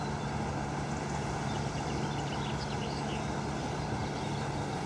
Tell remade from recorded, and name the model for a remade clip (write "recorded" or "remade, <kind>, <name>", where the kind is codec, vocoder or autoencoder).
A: recorded